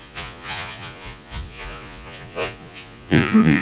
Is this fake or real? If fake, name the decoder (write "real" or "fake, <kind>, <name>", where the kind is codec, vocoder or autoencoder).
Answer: fake, vocoder, Vocos